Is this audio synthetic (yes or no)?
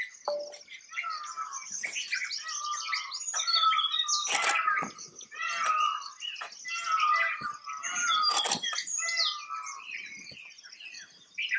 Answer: no